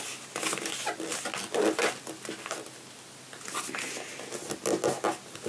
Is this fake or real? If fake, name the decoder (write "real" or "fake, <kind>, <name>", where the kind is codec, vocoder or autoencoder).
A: real